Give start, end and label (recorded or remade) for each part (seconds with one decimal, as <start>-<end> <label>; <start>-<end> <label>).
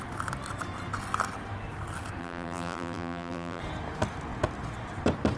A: 0.0-2.2 recorded; 2.2-3.6 remade; 3.6-5.4 recorded